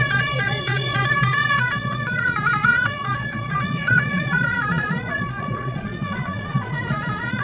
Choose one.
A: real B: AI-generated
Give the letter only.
B